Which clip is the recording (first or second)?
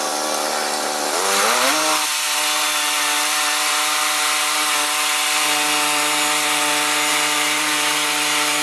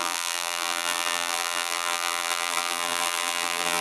first